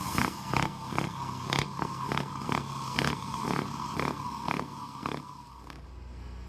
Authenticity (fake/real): fake